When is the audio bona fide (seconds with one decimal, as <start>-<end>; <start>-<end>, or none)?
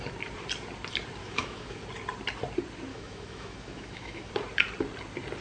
0.0-1.2; 1.8-2.9; 4.3-5.4